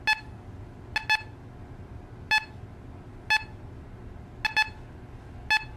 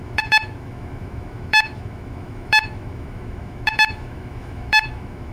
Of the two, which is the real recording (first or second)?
first